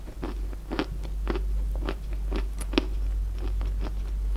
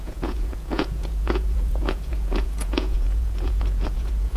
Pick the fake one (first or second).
second